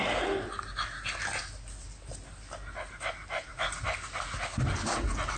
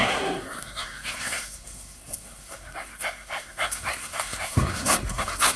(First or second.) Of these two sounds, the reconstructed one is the second